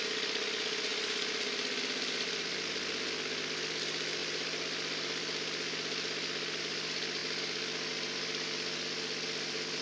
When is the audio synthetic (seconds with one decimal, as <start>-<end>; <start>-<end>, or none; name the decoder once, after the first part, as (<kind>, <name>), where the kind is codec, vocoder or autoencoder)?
none